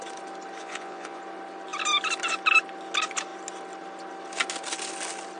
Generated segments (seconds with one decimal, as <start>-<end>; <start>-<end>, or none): 0.6-1.2